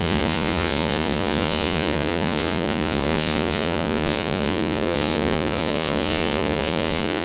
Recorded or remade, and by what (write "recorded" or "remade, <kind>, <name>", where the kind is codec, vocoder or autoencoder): remade, vocoder, Vocos